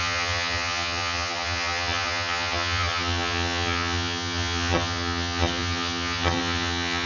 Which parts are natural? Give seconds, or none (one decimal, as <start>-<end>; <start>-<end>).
none